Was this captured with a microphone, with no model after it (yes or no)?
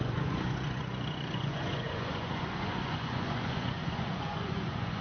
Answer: no